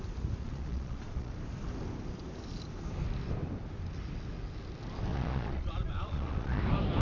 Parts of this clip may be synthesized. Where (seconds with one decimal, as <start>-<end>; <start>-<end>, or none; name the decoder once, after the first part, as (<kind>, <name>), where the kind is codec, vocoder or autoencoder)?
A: 0.4-1.3 (vocoder, Vocos); 5.1-6.6